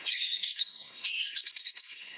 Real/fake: fake